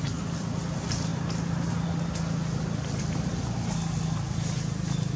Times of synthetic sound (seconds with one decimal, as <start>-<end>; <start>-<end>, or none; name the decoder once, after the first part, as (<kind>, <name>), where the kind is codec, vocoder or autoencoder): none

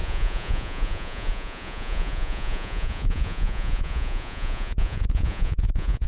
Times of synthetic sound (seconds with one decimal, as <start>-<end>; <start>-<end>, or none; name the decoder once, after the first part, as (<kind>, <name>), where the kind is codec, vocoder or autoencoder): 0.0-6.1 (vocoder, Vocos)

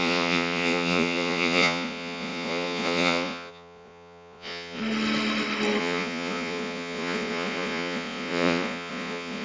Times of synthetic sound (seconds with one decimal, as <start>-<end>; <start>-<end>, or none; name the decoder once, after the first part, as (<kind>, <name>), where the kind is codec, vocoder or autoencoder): 0.0-4.8 (vocoder, Vocos); 5.8-9.4

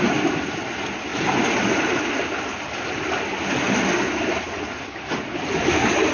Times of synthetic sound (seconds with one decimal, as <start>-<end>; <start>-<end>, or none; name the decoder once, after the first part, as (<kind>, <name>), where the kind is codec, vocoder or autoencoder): none

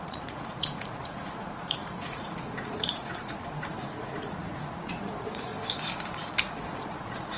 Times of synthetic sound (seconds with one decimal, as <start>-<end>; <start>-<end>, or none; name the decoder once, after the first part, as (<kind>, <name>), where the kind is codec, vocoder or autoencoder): 0.0-5.5 (vocoder, Vocos); 6.4-7.4

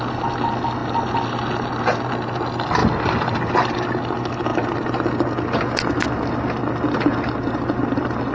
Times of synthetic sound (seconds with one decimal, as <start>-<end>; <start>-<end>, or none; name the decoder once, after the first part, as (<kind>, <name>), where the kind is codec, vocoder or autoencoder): none

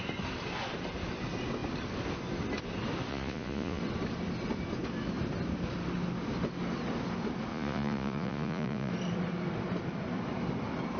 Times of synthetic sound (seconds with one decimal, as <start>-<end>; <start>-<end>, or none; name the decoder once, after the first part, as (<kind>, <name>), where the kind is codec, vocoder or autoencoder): 3.1-3.8 (vocoder, Vocos); 7.5-8.9